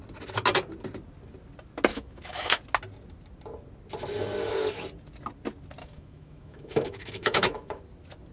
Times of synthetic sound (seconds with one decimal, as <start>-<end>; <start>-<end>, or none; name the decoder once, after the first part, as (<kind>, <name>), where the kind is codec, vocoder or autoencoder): 1.9-2.6 (autoencoder, DAC-VAE); 5.8-7.8